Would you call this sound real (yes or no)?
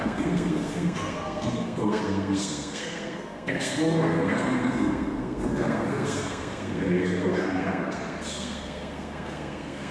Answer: no